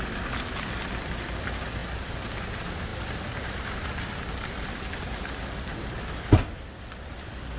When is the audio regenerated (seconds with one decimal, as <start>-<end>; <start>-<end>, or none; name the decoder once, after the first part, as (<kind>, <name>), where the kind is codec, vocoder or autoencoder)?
none